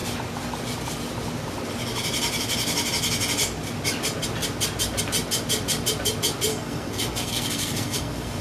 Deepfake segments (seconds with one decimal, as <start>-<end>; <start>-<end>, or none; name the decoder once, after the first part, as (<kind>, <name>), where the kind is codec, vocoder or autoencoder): 6.5-8.4 (codec, SNAC)